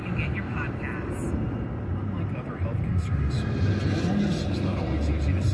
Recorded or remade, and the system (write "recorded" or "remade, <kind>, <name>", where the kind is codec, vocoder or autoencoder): recorded